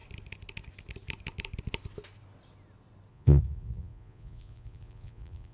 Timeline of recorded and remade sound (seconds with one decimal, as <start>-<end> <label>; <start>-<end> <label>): 0.0-3.1 recorded; 3.1-5.5 remade